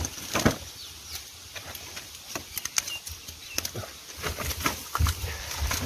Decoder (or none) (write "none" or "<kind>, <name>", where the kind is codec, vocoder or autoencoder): none